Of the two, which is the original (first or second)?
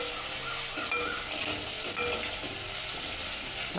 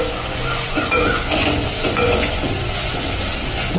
first